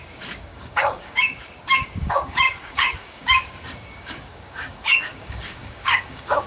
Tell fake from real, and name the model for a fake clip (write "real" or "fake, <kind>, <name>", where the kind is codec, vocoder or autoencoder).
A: fake, codec, DAC